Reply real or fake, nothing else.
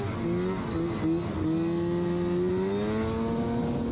real